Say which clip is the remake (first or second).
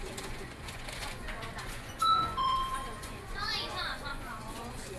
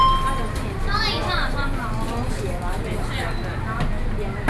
first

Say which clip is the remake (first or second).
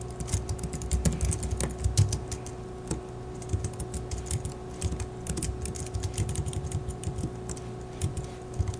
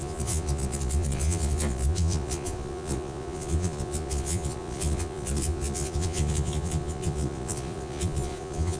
second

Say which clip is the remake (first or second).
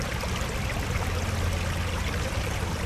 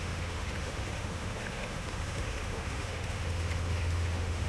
second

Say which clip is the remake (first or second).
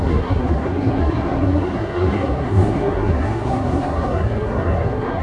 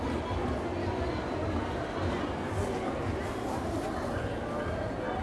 first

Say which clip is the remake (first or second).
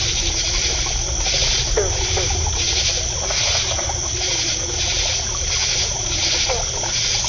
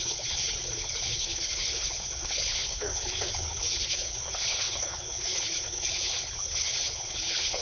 second